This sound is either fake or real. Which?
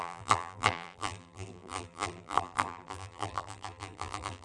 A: fake